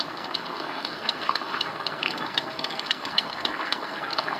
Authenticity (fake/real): fake